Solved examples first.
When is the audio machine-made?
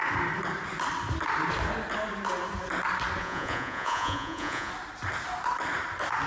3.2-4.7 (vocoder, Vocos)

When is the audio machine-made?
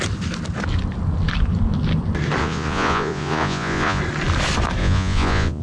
2.4-4.0 (vocoder, Vocos); 4.8-5.6